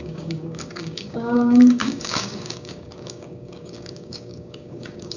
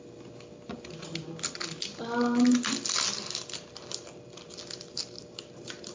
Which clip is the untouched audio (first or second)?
second